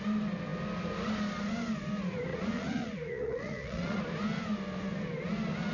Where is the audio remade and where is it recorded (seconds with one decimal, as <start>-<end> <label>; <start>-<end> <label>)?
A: 0.0-2.3 recorded; 2.3-4.0 remade; 4.0-5.7 recorded